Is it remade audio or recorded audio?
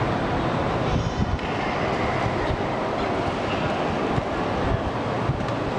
recorded